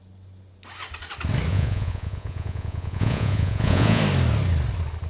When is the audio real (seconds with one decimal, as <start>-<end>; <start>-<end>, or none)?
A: 0.0-1.5; 4.0-5.1